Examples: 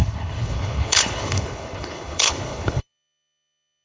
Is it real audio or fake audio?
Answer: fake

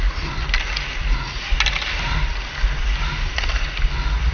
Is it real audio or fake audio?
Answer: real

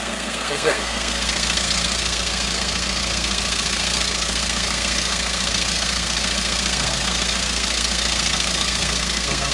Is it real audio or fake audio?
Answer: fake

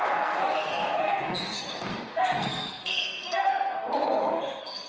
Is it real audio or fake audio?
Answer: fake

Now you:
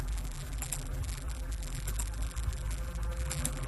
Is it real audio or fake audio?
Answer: fake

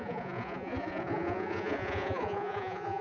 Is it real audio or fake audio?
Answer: fake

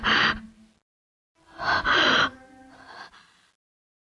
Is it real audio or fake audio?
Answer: real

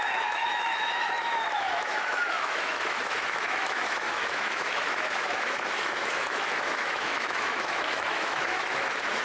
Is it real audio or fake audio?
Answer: fake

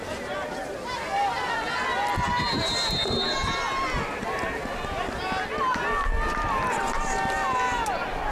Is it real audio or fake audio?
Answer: real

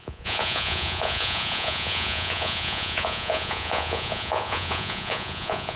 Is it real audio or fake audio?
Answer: fake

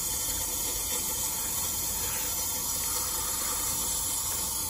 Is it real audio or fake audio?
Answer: real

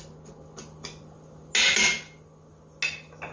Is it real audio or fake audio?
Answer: real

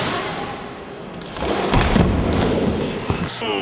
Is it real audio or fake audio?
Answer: real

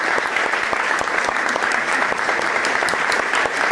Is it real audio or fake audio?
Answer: fake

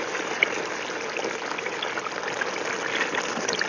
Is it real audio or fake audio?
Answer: real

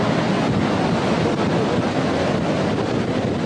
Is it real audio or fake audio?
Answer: real